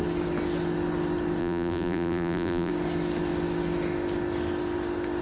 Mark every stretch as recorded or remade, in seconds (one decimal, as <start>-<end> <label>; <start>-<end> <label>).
0.0-1.4 recorded; 1.4-2.7 remade; 2.7-5.2 recorded